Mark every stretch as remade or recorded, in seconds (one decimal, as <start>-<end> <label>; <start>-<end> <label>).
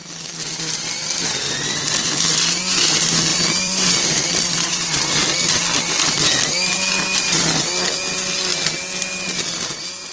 0.0-3.3 recorded; 3.3-5.5 remade; 5.5-10.1 recorded